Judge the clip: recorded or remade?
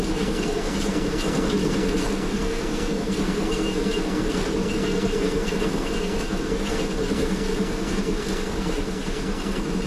remade